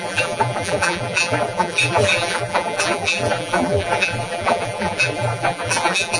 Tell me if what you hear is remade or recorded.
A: remade